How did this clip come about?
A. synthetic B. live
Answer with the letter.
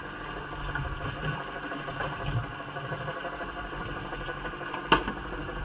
B